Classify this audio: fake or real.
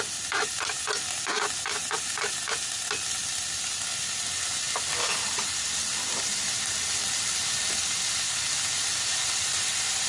real